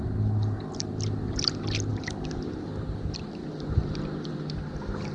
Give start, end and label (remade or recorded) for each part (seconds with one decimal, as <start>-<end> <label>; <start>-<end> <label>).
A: 0.0-5.1 recorded